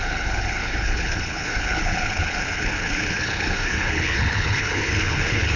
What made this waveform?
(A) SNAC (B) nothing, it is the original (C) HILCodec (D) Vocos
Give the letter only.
C